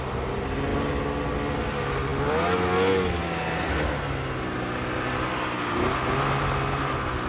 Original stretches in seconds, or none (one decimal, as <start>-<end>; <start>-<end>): 0.0-7.3